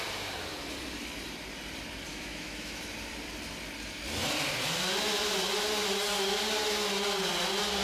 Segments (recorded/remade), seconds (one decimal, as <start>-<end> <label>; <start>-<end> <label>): 0.0-2.1 recorded; 2.1-2.8 remade; 2.8-7.8 recorded